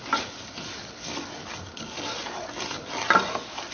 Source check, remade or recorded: recorded